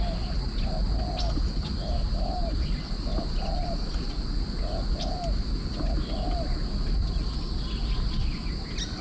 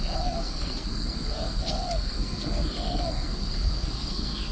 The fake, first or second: second